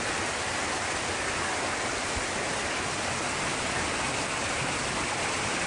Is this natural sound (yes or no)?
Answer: yes